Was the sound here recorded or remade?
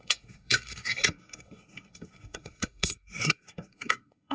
remade